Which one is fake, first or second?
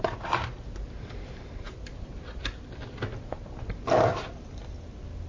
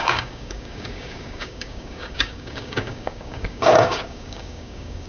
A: second